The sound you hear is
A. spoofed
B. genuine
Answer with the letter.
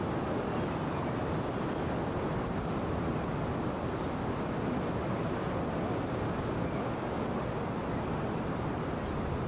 B